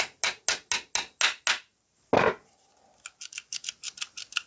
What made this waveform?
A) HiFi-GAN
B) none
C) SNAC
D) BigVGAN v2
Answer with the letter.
B